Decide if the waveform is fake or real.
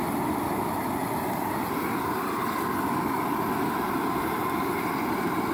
real